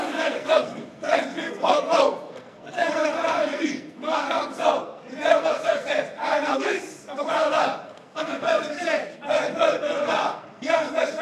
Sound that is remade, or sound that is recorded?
remade